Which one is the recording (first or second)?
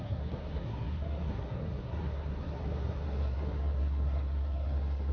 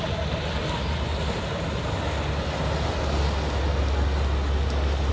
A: second